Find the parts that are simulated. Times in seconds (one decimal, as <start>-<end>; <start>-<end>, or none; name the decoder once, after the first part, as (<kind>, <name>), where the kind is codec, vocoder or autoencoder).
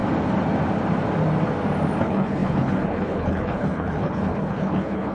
2.0-5.1 (codec, HILCodec)